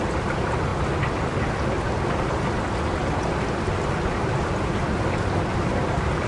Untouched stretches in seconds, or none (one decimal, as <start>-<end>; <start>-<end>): 0.0-6.3